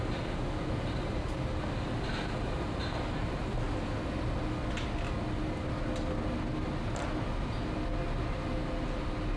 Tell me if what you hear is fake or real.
real